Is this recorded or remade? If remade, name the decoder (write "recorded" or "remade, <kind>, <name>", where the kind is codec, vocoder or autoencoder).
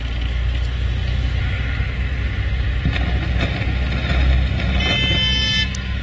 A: recorded